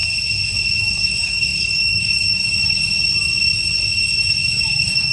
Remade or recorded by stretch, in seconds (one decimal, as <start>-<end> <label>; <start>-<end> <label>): 0.0-0.8 recorded; 0.8-2.4 remade; 2.4-4.6 recorded; 4.6-5.1 remade